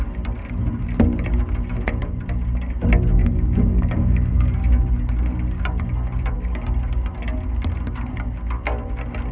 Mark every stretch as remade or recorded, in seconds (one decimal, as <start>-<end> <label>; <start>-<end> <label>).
0.0-3.2 recorded; 3.2-4.5 remade; 4.5-9.3 recorded